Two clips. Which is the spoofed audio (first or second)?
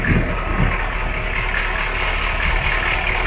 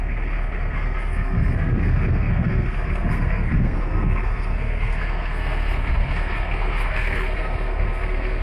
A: second